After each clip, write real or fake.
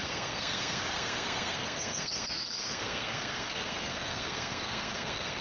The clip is fake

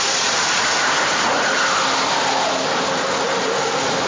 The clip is real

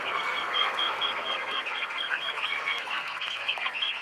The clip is fake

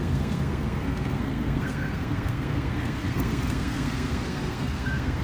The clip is fake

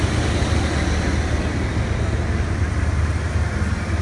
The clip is real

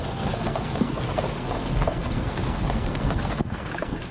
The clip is fake